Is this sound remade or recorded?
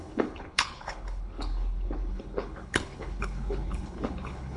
remade